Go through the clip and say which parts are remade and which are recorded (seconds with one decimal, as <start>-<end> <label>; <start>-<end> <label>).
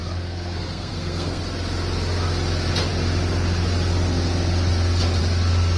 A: 0.0-1.4 remade; 1.4-5.8 recorded